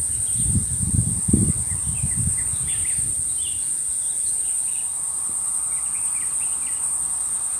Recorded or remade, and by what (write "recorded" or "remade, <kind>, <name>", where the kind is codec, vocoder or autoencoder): recorded